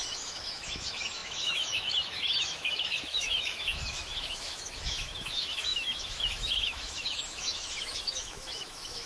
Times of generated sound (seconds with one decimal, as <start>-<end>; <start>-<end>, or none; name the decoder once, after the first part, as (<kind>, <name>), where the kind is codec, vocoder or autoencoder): 0.0-9.1 (autoencoder, DAC-VAE)